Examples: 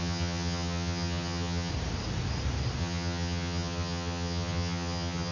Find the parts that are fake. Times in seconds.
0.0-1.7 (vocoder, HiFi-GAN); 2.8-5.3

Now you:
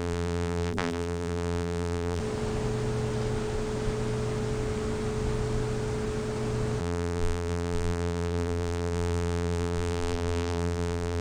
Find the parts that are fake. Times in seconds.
0.0-2.2 (vocoder, BigVGAN v2); 6.8-11.2

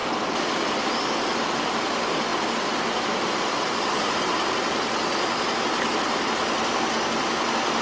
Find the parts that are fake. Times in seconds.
none